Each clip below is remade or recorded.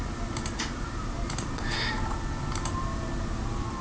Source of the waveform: recorded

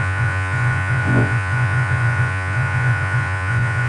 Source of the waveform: remade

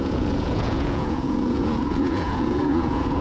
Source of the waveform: remade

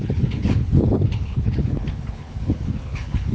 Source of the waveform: remade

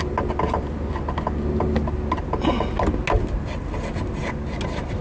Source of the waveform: recorded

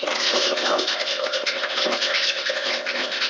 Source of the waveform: remade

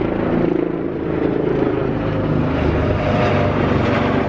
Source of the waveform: remade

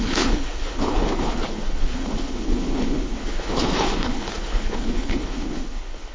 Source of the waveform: remade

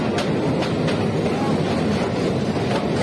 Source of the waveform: recorded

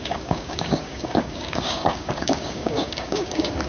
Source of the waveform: remade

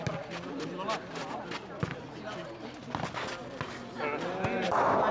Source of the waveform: recorded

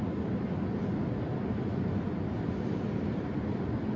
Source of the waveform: recorded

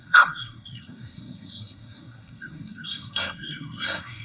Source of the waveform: remade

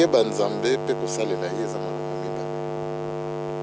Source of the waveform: recorded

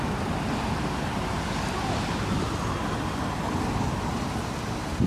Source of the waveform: recorded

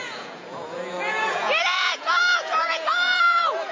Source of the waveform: remade